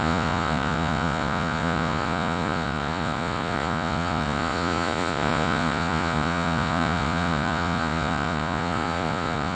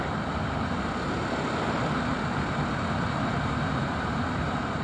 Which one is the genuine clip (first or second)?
second